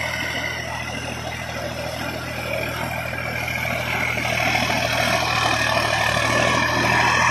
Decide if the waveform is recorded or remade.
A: recorded